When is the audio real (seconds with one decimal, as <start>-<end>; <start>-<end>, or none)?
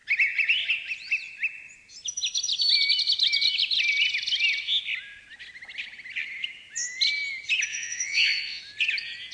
0.0-7.7; 8.6-9.3